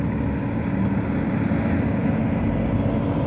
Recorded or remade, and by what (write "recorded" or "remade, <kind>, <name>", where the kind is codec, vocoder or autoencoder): recorded